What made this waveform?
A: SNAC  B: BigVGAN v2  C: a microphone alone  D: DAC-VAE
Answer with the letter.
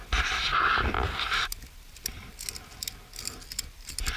C